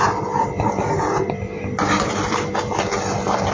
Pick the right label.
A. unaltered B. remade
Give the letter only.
A